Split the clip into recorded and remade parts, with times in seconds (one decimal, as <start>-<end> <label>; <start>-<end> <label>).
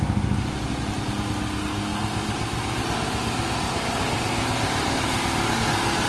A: 0.0-6.1 recorded